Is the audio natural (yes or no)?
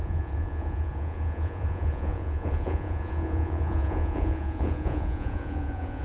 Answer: no